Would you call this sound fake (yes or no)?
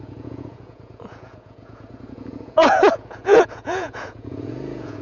yes